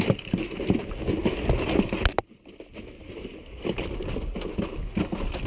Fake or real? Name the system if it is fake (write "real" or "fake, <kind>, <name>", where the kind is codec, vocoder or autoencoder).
real